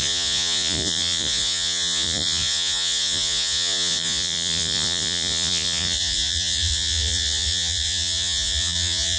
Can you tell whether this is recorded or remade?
remade